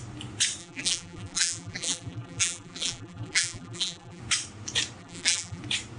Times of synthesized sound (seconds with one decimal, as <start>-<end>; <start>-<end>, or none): 0.6-4.2; 5.0-5.6

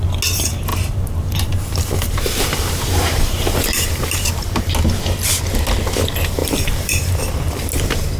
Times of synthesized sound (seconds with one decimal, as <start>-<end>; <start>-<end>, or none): 0.7-4.3; 6.4-7.1